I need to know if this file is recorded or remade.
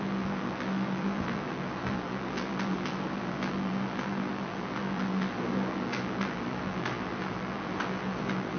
remade